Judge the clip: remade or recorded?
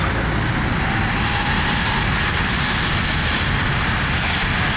recorded